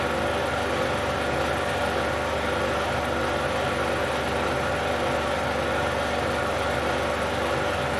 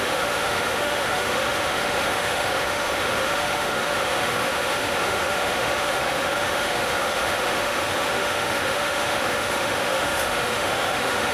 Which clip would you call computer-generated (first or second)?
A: second